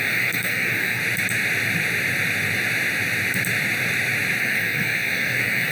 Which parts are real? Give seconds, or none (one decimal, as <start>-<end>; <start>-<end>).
1.0-4.4